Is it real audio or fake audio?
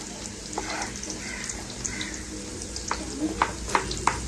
real